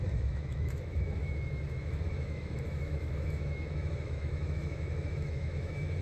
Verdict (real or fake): fake